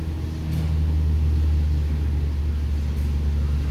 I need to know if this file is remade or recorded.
recorded